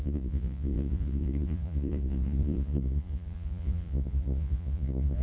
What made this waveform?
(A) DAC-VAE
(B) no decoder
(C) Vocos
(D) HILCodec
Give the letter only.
C